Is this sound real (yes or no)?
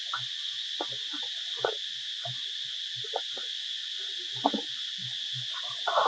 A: yes